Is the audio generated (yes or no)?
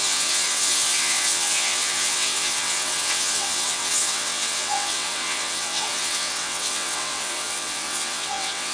yes